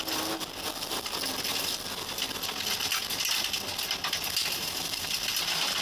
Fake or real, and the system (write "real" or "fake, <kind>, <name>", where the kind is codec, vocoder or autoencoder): real